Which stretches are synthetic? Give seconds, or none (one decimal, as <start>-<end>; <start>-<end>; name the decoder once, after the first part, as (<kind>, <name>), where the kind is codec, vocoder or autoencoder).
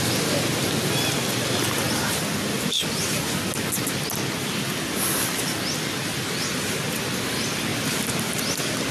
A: none